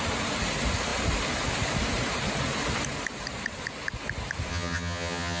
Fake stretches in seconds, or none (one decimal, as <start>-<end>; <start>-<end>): 4.5-5.4